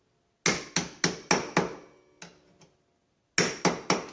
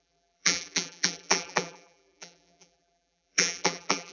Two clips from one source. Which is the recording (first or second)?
first